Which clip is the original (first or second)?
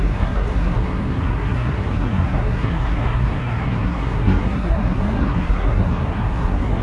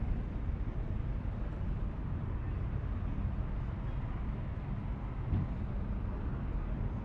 second